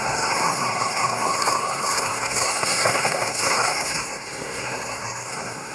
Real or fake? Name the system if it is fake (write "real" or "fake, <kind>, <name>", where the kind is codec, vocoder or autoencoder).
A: fake, codec, SNAC